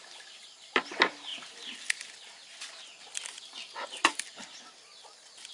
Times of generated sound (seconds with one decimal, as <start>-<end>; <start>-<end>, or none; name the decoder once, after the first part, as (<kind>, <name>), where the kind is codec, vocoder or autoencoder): none